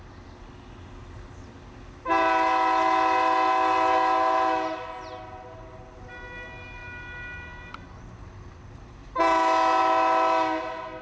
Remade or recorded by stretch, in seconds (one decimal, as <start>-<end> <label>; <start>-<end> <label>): 0.0-11.0 recorded